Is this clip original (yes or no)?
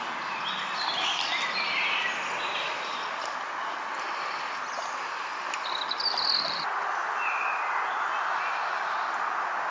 yes